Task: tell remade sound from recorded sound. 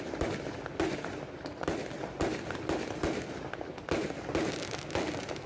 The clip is recorded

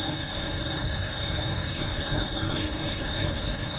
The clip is remade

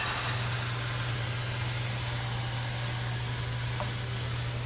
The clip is recorded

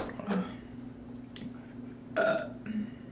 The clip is recorded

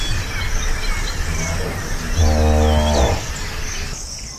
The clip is recorded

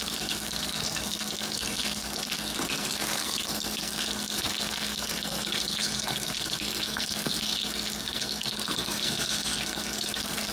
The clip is remade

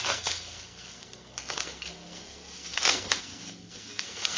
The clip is remade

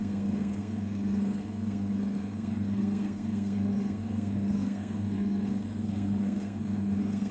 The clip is remade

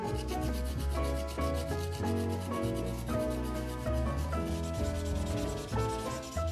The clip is recorded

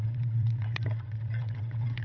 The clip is remade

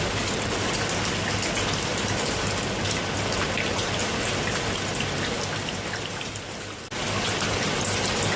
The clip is recorded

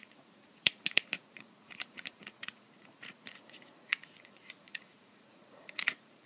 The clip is remade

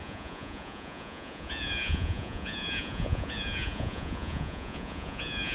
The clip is remade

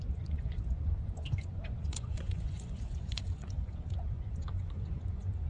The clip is remade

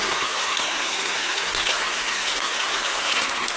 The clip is remade